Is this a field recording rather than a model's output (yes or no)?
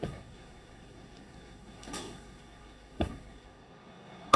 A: no